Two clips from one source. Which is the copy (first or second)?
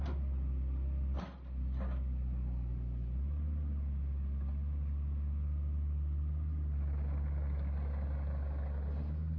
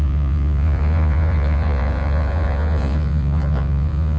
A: second